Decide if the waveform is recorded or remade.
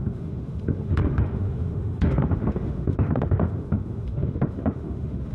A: remade